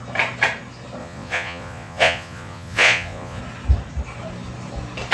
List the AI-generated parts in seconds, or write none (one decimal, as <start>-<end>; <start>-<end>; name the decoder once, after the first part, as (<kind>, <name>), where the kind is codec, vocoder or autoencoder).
1.0-3.4 (vocoder, Vocos)